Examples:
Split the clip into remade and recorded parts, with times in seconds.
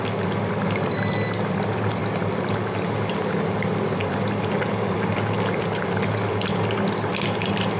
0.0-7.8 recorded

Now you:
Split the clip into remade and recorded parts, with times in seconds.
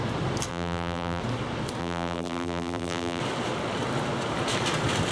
0.0-0.5 recorded; 0.5-1.2 remade; 1.2-1.8 recorded; 1.8-3.2 remade; 3.2-5.1 recorded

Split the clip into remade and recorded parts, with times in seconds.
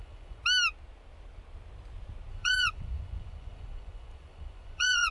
0.0-0.4 remade; 0.4-2.3 recorded; 2.3-5.1 remade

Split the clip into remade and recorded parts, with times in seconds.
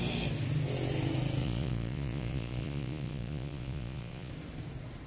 0.0-1.4 recorded; 1.4-4.3 remade; 4.3-5.1 recorded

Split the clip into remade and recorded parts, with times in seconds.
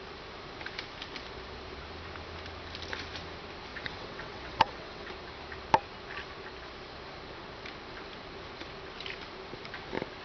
0.0-3.7 recorded; 3.7-5.1 remade; 5.1-10.2 recorded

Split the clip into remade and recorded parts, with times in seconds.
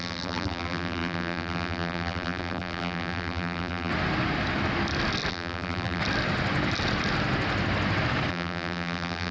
0.0-3.9 remade; 3.9-5.3 recorded; 5.3-6.0 remade; 6.0-8.3 recorded; 8.3-9.3 remade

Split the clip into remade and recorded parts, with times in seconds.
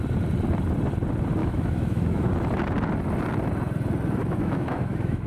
0.0-1.4 recorded; 1.4-2.3 remade; 2.3-4.2 recorded; 4.2-5.3 remade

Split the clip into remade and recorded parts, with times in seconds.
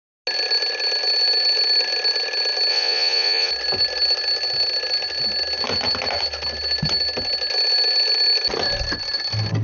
0.0-2.7 recorded; 2.7-3.5 remade; 3.5-9.6 recorded